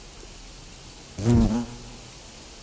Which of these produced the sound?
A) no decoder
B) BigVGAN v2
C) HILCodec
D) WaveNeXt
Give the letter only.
A